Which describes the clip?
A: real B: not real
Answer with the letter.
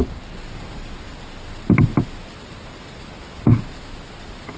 A